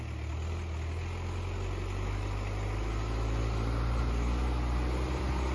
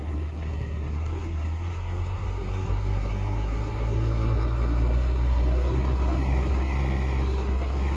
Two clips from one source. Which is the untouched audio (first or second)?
first